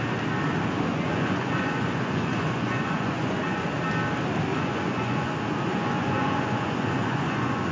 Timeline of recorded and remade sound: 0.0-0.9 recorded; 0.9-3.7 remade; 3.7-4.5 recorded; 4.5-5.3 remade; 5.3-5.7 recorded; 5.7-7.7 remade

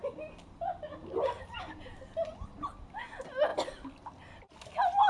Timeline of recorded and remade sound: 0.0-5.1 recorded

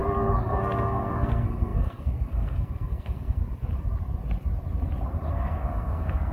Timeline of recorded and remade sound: 0.0-0.5 recorded; 0.5-3.4 remade; 3.4-5.3 recorded; 5.3-6.3 remade

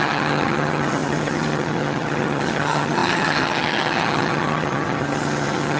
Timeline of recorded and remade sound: 0.0-5.8 remade